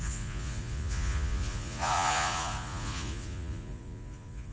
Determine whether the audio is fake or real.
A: fake